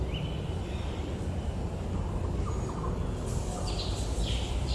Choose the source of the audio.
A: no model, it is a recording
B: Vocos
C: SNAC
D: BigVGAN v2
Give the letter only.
A